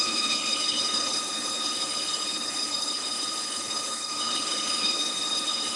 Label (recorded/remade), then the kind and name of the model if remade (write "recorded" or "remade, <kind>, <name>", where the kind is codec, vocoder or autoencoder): remade, codec, HILCodec